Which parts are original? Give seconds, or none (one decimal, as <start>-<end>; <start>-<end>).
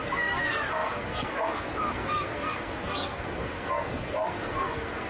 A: none